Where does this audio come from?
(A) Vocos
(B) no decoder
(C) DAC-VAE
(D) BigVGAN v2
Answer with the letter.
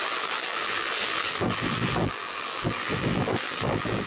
D